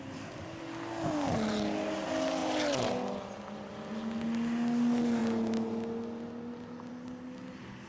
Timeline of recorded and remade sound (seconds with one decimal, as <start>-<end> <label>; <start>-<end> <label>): 0.0-7.9 recorded